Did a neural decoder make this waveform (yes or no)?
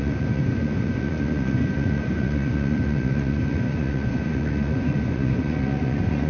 yes